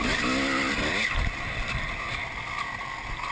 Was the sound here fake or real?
real